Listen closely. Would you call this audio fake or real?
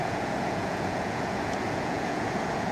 fake